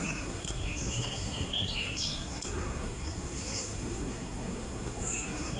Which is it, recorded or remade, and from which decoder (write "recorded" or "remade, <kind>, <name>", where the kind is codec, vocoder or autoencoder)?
remade, codec, SNAC